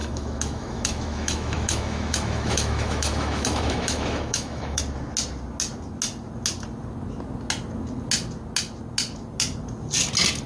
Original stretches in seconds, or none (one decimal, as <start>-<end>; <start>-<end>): 4.8-10.5